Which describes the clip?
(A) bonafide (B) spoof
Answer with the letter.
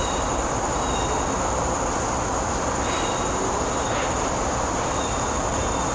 A